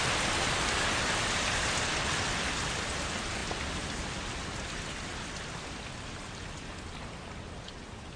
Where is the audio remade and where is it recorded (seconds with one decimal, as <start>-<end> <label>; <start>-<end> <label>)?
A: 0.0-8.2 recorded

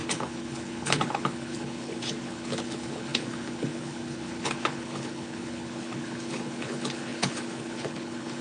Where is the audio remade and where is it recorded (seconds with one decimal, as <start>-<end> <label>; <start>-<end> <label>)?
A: 0.0-8.4 remade

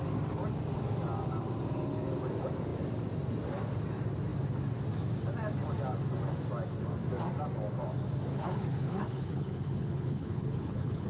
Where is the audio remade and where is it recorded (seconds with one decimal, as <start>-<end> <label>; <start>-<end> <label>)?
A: 0.0-8.3 recorded; 8.3-11.1 remade

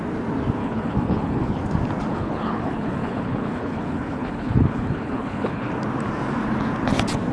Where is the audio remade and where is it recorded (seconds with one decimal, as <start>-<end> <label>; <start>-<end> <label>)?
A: 0.0-0.6 recorded; 0.6-1.6 remade; 1.6-2.1 recorded; 2.1-5.7 remade; 5.7-7.3 recorded